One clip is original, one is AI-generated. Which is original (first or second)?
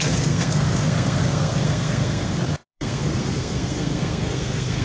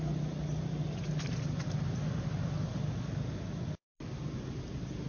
second